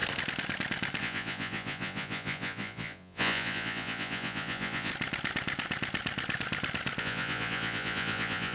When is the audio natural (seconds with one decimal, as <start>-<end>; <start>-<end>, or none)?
0.0-1.0; 4.9-7.0

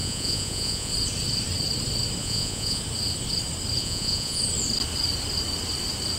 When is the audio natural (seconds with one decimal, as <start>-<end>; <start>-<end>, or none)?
0.9-2.2; 2.8-3.8; 4.4-6.2

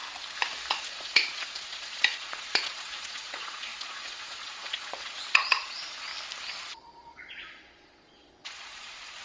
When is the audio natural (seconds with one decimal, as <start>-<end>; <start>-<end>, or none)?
0.0-0.7; 6.1-6.6

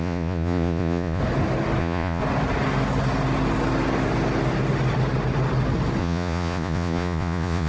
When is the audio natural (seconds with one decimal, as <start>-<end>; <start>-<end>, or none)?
1.2-1.8; 2.2-6.0